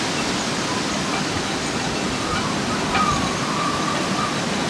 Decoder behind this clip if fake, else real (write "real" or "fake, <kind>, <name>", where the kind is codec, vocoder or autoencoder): real